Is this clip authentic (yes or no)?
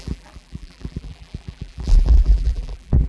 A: no